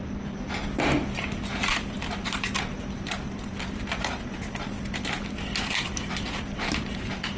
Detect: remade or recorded recorded